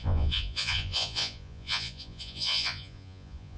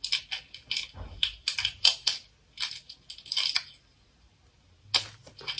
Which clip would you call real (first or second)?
second